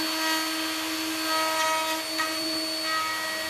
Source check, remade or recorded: recorded